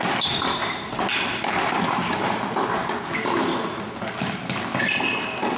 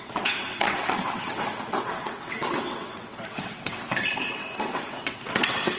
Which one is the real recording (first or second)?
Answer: first